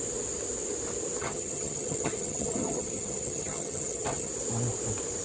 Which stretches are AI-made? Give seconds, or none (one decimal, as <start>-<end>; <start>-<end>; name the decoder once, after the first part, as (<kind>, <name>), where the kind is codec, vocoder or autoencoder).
1.2-4.3 (vocoder, HiFi-GAN)